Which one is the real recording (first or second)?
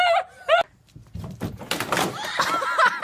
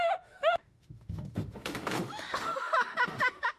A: first